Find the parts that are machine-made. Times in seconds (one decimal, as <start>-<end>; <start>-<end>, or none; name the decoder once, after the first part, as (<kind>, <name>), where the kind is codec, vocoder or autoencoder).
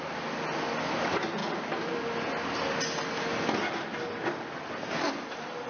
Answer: none